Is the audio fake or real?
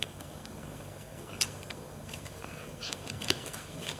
fake